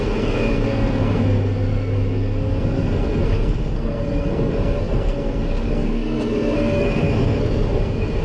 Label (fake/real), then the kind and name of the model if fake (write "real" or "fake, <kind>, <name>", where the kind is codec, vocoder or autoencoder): fake, codec, SNAC